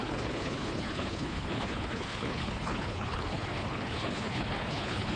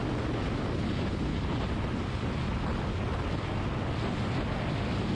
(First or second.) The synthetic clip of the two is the first